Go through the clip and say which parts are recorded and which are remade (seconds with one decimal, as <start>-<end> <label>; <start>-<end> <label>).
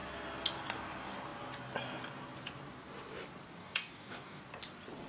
0.0-3.6 recorded; 3.6-4.4 remade; 4.4-5.1 recorded